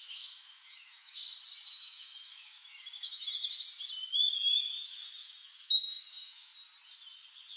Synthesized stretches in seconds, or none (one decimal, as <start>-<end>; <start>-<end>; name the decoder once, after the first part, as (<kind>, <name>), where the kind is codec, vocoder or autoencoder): 0.0-1.2 (autoencoder, DAC-VAE); 1.7-3.4; 4.8-6.5